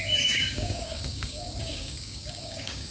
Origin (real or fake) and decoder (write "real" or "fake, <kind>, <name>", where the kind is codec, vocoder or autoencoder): fake, codec, DAC